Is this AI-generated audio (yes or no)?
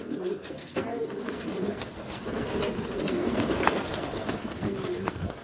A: yes